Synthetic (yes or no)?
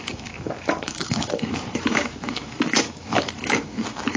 yes